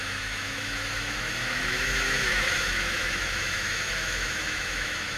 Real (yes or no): no